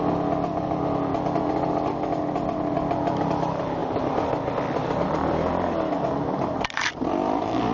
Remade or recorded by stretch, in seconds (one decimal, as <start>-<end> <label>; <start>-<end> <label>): 0.0-3.8 recorded; 3.8-7.0 remade; 7.0-7.7 recorded